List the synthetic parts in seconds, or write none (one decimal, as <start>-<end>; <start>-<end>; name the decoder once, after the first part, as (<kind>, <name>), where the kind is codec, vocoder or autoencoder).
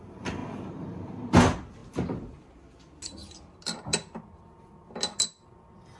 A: none